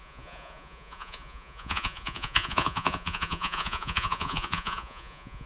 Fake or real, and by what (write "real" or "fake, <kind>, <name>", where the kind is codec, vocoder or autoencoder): fake, vocoder, Vocos